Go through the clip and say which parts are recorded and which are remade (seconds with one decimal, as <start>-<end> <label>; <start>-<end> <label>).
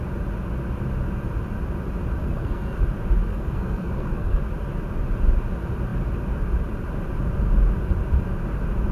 0.0-2.2 recorded; 2.2-2.8 remade; 2.8-3.3 recorded; 3.3-4.4 remade; 4.4-8.9 recorded